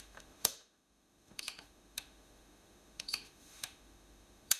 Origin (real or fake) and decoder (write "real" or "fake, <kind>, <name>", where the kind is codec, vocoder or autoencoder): fake, autoencoder, DAC-VAE